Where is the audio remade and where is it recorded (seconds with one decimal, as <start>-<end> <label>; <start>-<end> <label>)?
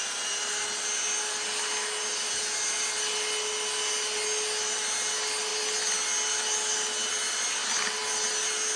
0.0-8.8 recorded